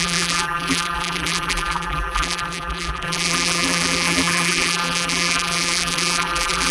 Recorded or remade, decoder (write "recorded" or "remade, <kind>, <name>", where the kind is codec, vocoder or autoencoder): remade, vocoder, BigVGAN v2